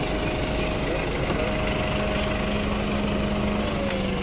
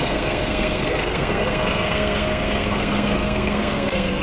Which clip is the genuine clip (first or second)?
first